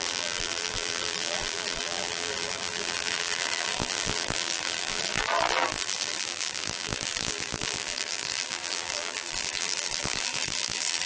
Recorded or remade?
remade